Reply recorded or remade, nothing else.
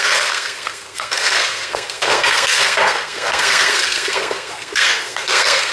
remade